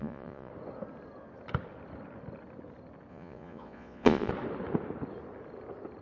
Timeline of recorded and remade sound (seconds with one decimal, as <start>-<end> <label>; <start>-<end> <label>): 0.0-0.5 remade; 0.5-3.1 recorded; 3.1-4.3 remade; 4.3-6.0 recorded